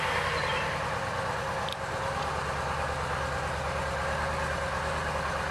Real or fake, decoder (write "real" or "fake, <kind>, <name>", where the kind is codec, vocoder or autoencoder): real